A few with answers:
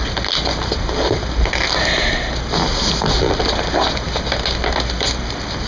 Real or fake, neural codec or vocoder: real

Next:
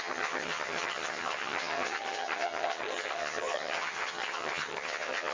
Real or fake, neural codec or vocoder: fake, vocoder, HiFi-GAN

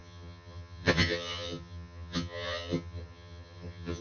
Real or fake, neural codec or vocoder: fake, vocoder, HiFi-GAN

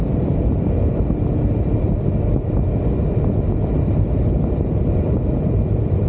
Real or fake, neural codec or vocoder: real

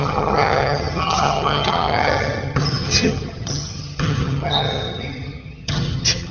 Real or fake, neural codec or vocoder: fake, vocoder, HiFi-GAN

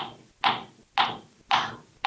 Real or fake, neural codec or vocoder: real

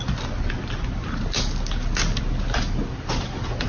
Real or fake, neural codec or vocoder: real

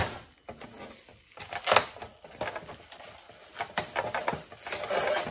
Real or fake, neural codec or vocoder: real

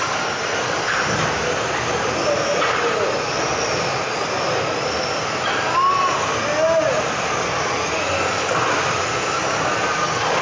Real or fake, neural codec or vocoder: real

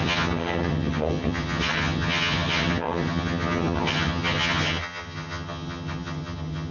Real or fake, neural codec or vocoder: fake, vocoder, HiFi-GAN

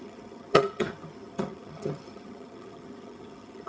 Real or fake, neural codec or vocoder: fake, vocoder, HiFi-GAN